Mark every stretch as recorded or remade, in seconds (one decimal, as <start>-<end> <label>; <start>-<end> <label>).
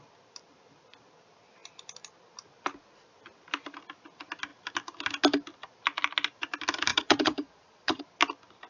0.0-6.9 recorded; 6.9-8.0 remade; 8.0-8.7 recorded